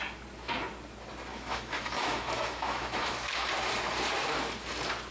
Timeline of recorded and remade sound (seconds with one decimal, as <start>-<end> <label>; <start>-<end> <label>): 0.0-1.3 recorded; 1.3-3.5 remade; 3.5-5.1 recorded